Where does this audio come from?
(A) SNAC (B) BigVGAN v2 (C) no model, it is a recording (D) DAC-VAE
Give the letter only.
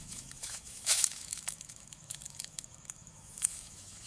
D